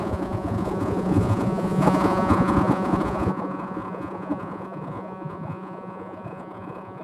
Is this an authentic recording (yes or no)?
no